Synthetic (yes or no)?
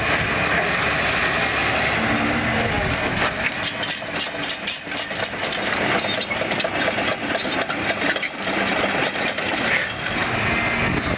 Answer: no